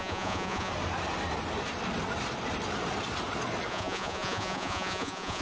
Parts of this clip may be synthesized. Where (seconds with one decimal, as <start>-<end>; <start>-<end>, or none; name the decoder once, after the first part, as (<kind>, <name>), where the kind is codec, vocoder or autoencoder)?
0.0-0.7 (vocoder, Vocos); 3.7-5.4